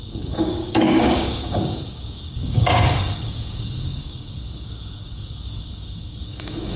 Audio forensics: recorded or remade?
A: remade